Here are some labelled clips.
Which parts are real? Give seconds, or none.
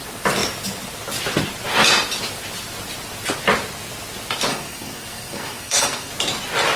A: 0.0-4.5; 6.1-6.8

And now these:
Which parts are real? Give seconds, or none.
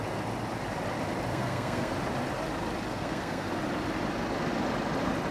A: 0.0-1.3; 1.9-2.9; 3.5-5.3